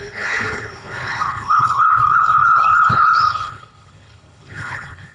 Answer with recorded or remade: remade